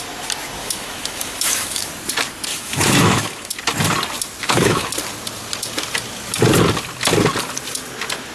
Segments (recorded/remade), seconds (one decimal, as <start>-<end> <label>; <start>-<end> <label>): 0.0-0.6 recorded; 0.6-1.9 remade; 1.9-2.5 recorded; 2.5-3.5 remade; 3.5-4.4 recorded; 4.4-4.9 remade; 4.9-8.3 recorded